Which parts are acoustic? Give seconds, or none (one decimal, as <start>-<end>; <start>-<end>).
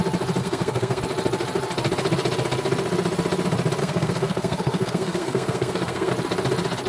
0.0-0.4; 1.0-3.8; 6.1-6.9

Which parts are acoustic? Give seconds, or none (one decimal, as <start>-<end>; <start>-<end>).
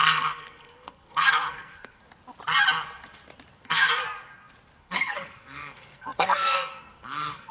2.0-3.6; 4.0-4.8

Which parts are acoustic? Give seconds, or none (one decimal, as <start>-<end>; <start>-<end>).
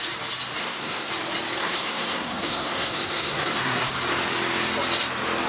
0.0-0.6; 1.1-1.6; 3.9-5.5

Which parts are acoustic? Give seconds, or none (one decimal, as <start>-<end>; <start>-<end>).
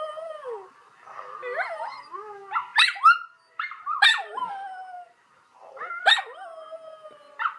0.0-7.6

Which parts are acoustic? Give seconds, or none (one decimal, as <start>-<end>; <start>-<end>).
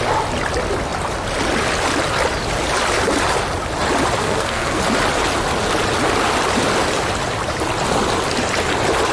0.0-4.2; 4.8-9.1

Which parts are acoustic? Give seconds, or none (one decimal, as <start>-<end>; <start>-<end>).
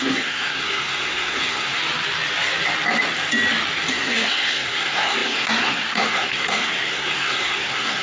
1.8-3.9